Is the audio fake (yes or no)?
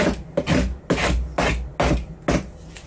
no